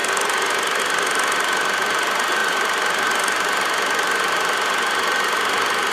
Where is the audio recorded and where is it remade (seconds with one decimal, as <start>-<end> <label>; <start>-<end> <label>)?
0.0-0.8 recorded; 0.8-5.9 remade